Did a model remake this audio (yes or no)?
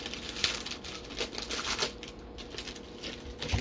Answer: no